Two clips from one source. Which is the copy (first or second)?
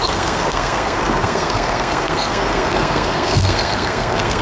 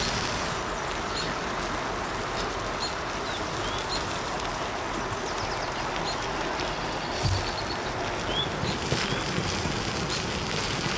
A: first